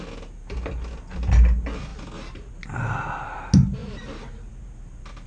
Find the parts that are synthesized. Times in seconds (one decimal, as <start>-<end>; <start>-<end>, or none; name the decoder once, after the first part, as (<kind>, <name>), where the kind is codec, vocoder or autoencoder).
3.8-4.5 (vocoder, BigVGAN v2)